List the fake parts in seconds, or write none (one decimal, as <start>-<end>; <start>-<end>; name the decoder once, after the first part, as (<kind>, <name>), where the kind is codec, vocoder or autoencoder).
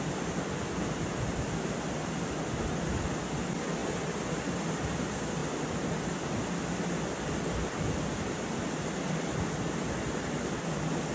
none